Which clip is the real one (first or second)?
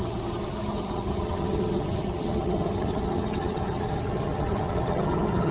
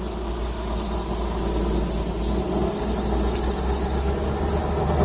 second